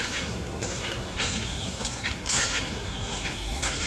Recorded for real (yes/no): no